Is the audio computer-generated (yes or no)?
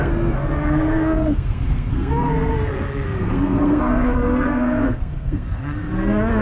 yes